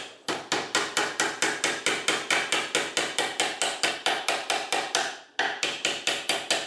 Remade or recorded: recorded